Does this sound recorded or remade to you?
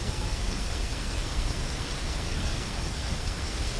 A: remade